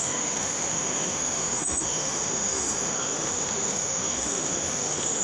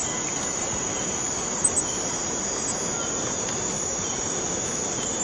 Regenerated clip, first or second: first